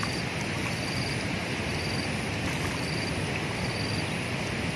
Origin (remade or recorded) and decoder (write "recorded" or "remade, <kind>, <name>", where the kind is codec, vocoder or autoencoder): recorded